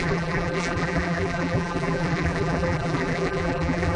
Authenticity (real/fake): fake